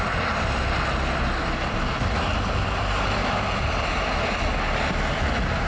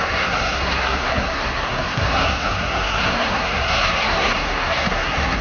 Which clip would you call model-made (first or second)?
second